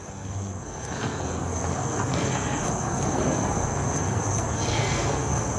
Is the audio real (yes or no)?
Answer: no